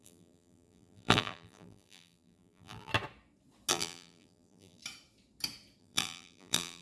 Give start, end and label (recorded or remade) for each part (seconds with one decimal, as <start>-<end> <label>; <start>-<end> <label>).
0.0-2.9 remade; 2.9-3.7 recorded; 3.7-4.8 remade; 4.8-5.8 recorded; 5.8-6.8 remade